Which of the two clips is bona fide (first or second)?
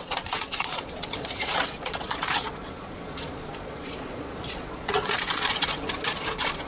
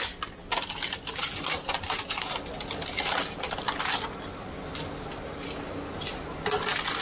second